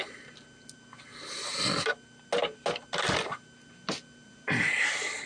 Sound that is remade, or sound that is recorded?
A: recorded